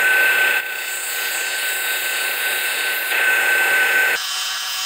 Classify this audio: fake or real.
fake